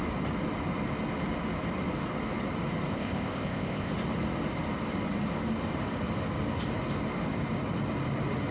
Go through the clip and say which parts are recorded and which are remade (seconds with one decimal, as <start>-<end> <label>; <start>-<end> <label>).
0.0-2.9 recorded; 2.9-3.9 remade; 3.9-8.5 recorded